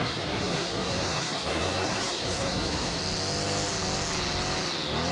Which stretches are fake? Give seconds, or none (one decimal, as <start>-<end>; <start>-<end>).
0.0-3.0